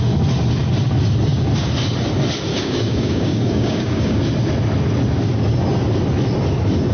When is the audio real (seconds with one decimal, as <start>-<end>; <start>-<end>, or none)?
0.0-2.5; 4.2-6.9